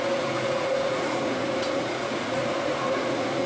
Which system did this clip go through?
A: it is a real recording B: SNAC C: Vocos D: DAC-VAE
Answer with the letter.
C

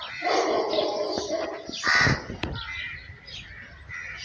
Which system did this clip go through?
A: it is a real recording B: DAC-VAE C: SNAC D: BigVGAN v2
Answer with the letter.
A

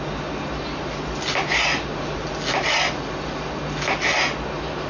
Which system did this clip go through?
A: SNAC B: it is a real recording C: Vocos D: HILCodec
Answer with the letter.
B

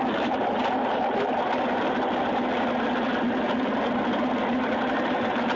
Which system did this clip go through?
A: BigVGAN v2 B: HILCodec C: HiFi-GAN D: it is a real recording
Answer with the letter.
D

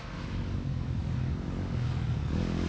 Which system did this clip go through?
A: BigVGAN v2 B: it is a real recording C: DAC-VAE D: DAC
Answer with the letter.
D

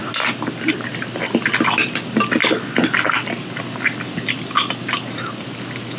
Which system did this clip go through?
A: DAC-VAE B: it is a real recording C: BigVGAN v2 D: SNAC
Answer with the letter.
B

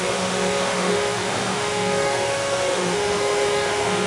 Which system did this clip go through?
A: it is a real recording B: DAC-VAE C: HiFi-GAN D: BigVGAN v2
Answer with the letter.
B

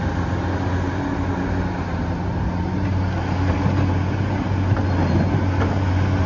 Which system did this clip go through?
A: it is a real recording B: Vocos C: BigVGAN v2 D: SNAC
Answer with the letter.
A